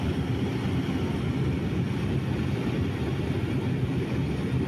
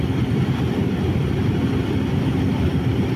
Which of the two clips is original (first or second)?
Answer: first